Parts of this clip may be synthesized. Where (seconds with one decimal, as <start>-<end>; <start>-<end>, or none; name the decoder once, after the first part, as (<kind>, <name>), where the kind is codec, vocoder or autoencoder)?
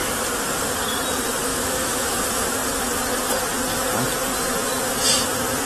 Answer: 1.5-2.2 (autoencoder, DAC-VAE)